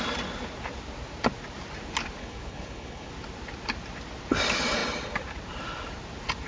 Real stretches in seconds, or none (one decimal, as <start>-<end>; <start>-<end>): 0.0-2.2; 3.1-6.5